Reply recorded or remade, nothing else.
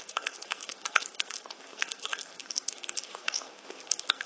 remade